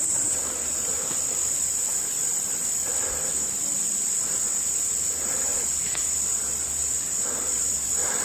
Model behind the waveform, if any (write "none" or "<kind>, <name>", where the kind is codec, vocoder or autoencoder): vocoder, BigVGAN v2